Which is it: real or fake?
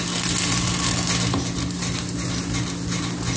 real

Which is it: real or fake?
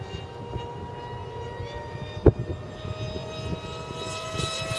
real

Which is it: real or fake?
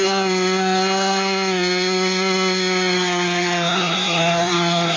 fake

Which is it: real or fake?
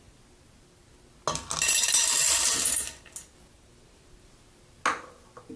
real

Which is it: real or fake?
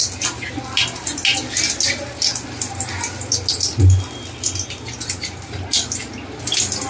real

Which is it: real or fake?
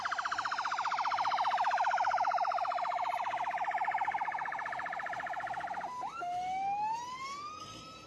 real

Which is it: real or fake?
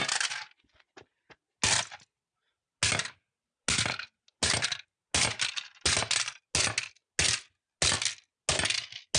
real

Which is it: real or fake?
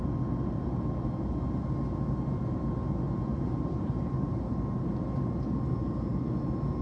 real